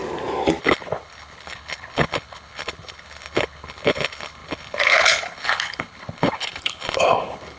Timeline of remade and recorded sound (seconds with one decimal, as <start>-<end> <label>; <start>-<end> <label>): 0.0-0.6 recorded; 0.6-7.6 remade